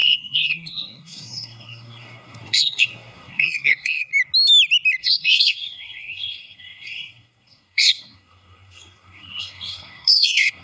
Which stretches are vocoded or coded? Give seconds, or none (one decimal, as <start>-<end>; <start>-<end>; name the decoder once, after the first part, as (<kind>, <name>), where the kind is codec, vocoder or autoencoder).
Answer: 0.0-4.1 (codec, SNAC); 5.0-10.6